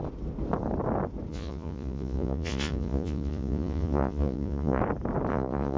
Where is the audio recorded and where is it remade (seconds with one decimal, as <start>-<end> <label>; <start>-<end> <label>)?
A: 0.0-1.3 recorded; 1.3-4.8 remade; 4.8-5.3 recorded; 5.3-5.8 remade